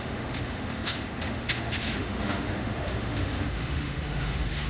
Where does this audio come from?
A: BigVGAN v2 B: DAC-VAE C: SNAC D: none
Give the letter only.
B